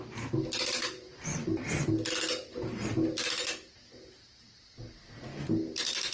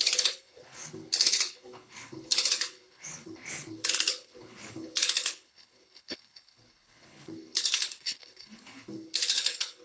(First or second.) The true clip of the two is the first